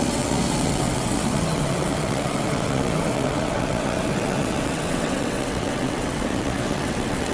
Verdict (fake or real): fake